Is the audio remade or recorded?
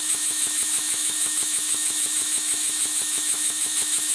remade